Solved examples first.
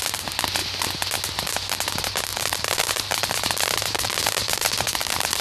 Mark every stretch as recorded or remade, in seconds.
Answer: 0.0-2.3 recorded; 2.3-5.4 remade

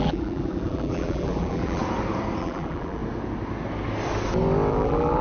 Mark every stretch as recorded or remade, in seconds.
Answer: 0.0-1.8 remade; 1.8-2.4 recorded; 2.4-3.0 remade; 3.0-4.7 recorded; 4.7-5.2 remade

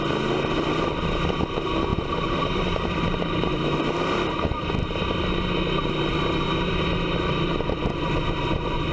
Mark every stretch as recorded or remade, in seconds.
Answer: 0.0-1.9 recorded; 1.9-3.9 remade; 3.9-8.9 recorded

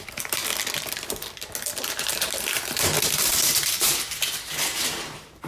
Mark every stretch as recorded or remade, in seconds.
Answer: 0.0-0.5 remade; 0.5-1.9 recorded; 1.9-5.5 remade

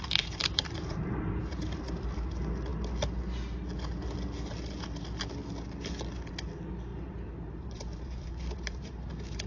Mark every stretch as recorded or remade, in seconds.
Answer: 0.0-0.4 recorded; 0.4-1.8 remade; 1.8-6.9 recorded; 6.9-9.5 remade